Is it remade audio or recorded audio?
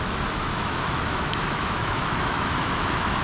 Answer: remade